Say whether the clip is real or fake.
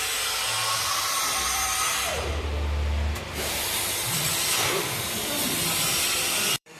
fake